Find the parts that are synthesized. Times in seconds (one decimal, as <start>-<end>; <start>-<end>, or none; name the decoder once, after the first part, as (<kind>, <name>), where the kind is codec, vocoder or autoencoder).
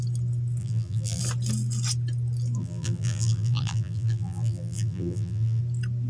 0.6-1.2 (vocoder, BigVGAN v2); 2.6-5.6